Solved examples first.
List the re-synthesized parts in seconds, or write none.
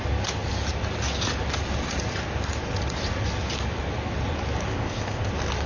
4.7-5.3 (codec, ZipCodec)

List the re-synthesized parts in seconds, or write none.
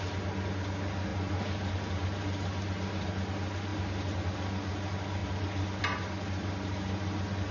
none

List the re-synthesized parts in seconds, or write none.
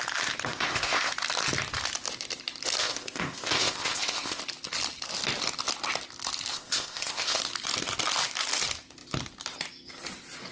0.5-1.1 (codec, ZipCodec); 2.8-4.4; 6.5-7.4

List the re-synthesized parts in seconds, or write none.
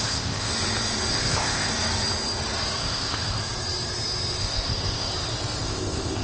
0.0-0.5 (codec, ZipCodec); 1.1-1.7; 2.8-3.4; 4.4-5.1; 5.6-6.2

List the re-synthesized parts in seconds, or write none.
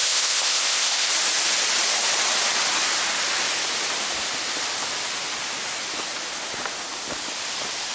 0.0-1.1 (codec, ZipCodec)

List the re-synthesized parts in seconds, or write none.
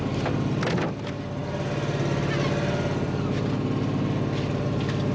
none